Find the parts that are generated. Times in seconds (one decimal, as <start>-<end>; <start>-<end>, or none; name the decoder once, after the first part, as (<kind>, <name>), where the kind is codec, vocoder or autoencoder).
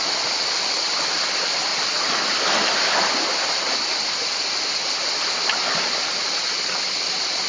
none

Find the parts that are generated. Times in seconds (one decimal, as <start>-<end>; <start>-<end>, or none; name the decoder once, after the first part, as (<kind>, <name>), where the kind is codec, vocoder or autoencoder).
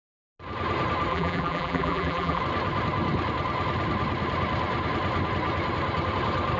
1.1-2.4 (vocoder, BigVGAN v2)